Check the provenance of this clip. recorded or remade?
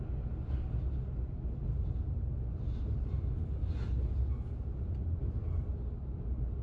recorded